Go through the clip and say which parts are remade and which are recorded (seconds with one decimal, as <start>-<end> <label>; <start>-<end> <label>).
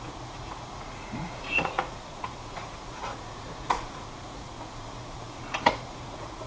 0.0-6.5 remade